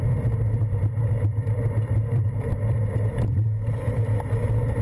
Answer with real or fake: fake